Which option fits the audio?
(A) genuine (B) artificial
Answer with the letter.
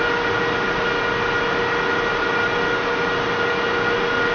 A